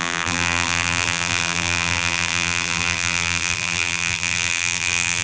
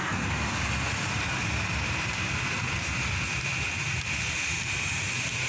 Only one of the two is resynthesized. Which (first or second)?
first